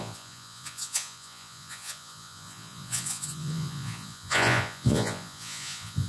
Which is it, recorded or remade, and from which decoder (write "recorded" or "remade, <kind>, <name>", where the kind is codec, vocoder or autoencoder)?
remade, vocoder, Vocos